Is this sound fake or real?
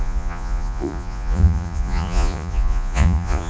fake